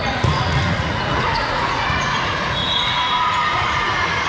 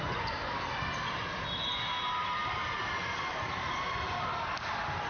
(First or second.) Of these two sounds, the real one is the second